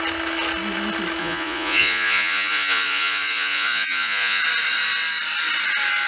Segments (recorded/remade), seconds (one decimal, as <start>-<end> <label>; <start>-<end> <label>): 0.0-1.2 recorded; 1.2-4.4 remade; 4.4-6.1 recorded